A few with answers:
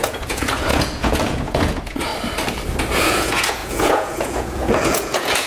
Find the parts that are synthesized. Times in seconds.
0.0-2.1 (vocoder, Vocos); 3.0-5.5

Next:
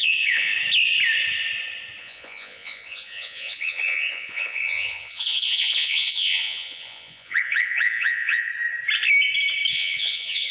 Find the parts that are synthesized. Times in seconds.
0.0-0.5 (vocoder, Vocos); 2.0-8.5; 9.7-10.5

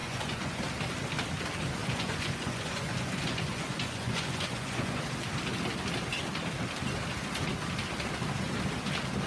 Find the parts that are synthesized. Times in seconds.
0.0-0.6 (vocoder, Vocos); 1.8-5.0

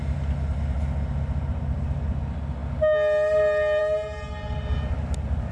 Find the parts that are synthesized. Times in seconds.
none

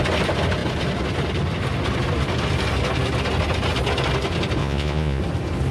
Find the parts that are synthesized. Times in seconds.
4.6-5.2 (vocoder, Vocos)

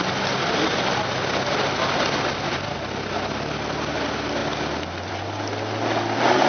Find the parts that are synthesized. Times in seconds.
none

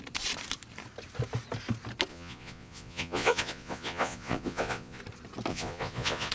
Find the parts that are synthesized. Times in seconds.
2.1-5.0 (vocoder, Vocos); 5.5-6.3

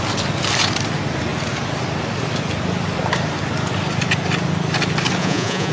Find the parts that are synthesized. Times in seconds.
5.2-5.7 (vocoder, Vocos)